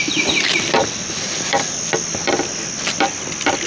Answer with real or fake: real